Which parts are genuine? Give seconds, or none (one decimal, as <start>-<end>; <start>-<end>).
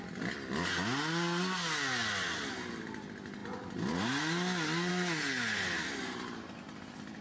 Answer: 0.0-7.2